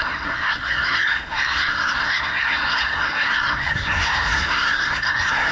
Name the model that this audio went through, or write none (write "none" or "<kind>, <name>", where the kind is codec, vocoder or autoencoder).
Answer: codec, SNAC